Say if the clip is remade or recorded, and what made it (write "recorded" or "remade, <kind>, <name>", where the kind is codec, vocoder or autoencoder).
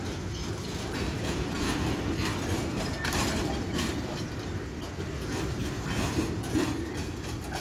remade, vocoder, BigVGAN v2